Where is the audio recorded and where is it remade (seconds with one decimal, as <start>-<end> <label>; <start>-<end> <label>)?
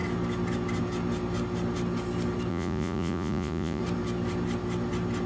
0.0-2.5 recorded; 2.5-3.8 remade; 3.8-5.3 recorded